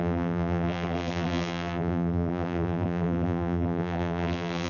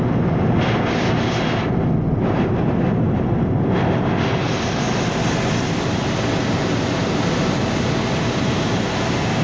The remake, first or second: first